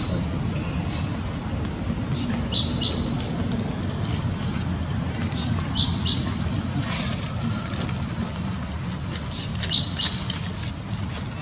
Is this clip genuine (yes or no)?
yes